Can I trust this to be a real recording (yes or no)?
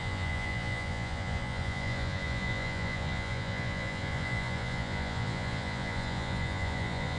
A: no